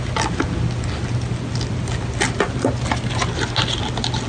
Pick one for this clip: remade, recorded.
recorded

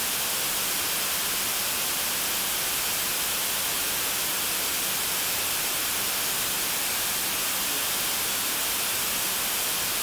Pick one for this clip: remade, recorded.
recorded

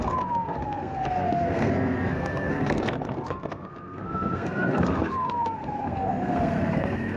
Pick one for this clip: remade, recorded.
remade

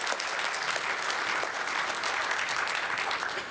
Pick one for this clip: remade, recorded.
recorded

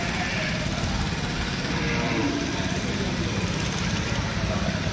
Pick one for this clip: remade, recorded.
remade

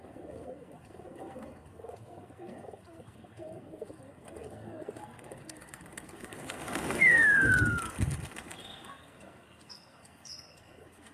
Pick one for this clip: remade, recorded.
remade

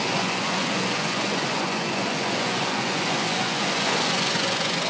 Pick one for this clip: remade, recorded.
remade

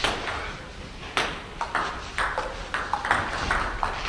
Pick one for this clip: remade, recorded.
recorded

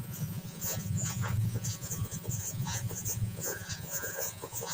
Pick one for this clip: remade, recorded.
remade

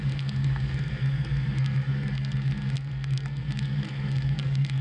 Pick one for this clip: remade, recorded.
remade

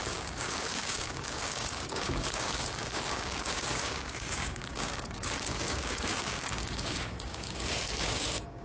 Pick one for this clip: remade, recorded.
remade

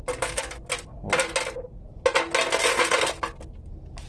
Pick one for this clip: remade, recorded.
recorded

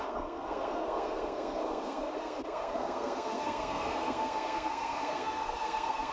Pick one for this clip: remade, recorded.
remade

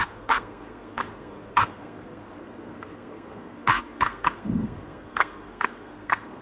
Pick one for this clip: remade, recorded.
remade